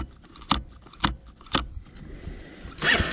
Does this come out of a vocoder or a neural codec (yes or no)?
no